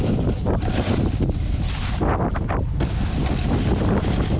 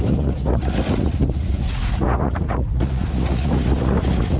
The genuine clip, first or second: first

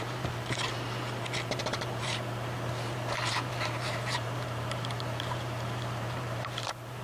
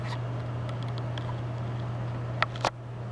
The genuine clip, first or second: second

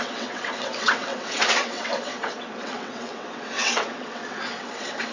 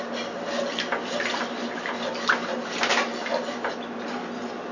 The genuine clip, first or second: second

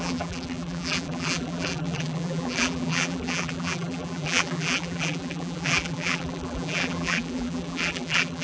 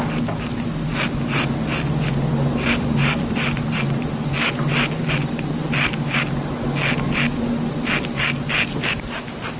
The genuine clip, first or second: second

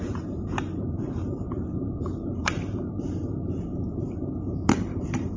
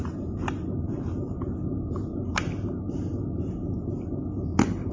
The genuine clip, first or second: second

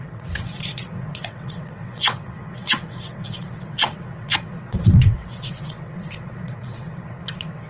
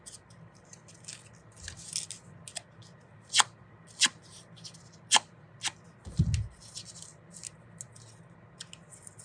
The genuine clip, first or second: second